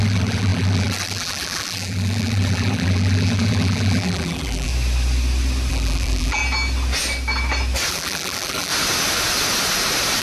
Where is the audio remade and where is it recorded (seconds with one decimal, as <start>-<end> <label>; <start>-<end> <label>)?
0.0-4.7 remade; 4.7-5.7 recorded; 5.7-6.4 remade; 6.4-7.9 recorded; 7.9-8.7 remade; 8.7-10.2 recorded